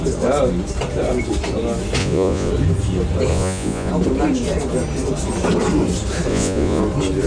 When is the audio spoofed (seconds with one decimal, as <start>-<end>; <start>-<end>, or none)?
2.0-2.5; 3.3-3.9; 6.3-6.8